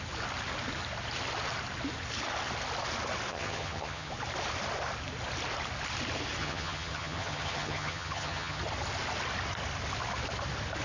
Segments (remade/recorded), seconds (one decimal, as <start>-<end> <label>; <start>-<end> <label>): 0.0-3.3 recorded; 3.3-4.1 remade; 4.1-6.4 recorded; 6.4-8.6 remade; 8.6-10.8 recorded